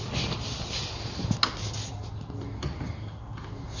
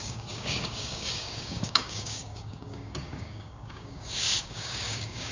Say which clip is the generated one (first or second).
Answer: second